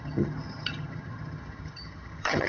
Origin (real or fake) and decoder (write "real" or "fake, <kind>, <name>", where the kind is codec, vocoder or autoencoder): fake, vocoder, HiFi-GAN